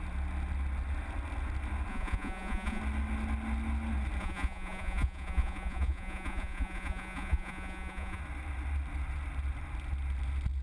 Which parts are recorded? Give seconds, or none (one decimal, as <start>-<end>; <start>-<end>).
0.0-1.9; 2.8-4.2; 8.2-10.6